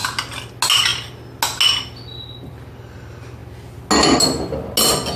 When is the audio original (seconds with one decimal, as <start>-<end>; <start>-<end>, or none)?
0.0-5.2